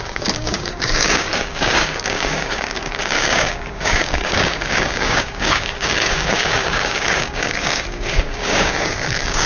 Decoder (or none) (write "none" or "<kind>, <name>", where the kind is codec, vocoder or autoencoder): codec, DAC